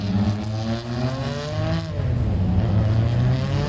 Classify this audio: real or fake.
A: real